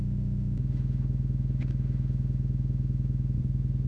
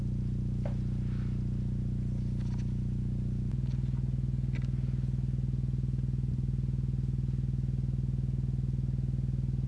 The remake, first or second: first